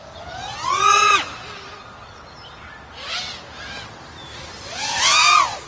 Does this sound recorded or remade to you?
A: recorded